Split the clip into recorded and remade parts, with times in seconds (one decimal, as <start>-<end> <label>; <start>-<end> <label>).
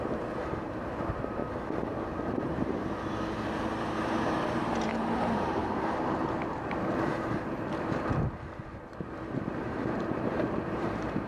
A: 0.0-1.4 remade; 1.4-3.6 recorded; 3.6-5.6 remade; 5.6-8.9 recorded; 8.9-11.3 remade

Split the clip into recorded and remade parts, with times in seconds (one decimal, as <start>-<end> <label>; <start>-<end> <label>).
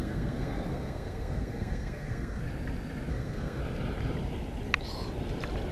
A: 0.0-2.4 remade; 2.4-3.1 recorded; 3.1-3.6 remade; 3.6-5.7 recorded